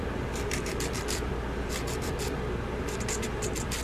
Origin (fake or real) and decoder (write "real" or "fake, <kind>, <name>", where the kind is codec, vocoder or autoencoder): fake, vocoder, BigVGAN v2